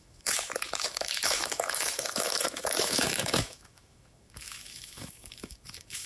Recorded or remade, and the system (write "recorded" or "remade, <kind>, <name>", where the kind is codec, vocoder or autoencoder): remade, autoencoder, DAC-VAE